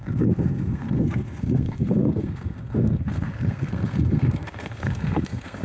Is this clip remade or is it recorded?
remade